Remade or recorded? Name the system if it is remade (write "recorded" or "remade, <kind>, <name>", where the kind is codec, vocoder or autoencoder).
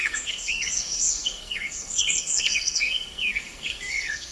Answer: remade, codec, SNAC